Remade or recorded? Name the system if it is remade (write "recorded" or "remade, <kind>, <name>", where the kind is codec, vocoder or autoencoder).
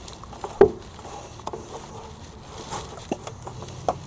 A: recorded